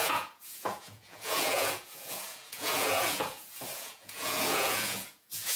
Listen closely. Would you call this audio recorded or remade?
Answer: remade